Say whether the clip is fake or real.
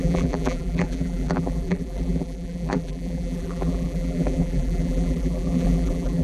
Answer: fake